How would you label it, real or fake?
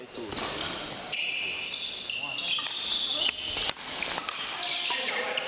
real